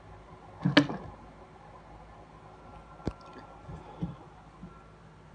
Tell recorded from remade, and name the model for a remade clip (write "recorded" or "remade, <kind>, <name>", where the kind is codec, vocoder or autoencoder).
recorded